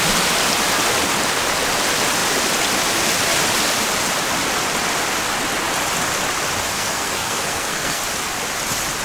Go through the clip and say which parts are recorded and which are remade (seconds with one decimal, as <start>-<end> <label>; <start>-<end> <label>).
0.0-6.7 recorded; 6.7-8.0 remade; 8.0-9.0 recorded